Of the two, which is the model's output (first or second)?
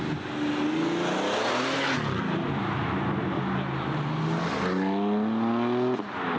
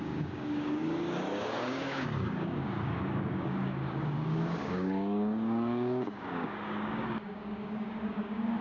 second